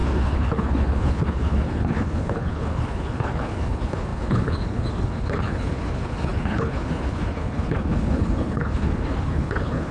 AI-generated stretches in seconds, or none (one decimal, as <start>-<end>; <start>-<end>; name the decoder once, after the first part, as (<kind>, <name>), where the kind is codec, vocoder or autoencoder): 0.0-9.9 (codec, HILCodec)